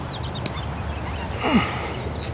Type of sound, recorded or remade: recorded